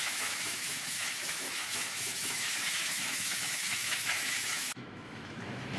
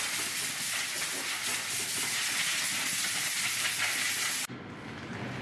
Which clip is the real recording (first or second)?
second